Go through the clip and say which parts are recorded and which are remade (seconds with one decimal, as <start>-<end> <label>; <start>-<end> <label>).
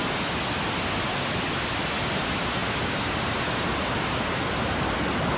0.0-5.4 recorded